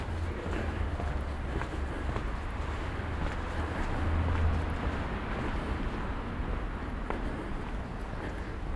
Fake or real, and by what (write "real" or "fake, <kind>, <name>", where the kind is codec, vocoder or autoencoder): real